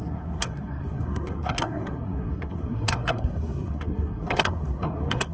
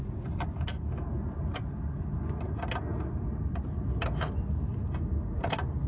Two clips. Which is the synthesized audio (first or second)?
first